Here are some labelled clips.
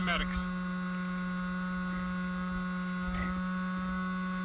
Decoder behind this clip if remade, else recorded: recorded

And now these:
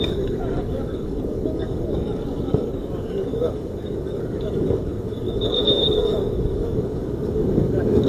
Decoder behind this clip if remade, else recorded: remade, codec, DAC